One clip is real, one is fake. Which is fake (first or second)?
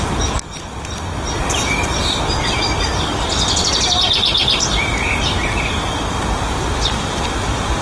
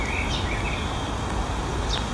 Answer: first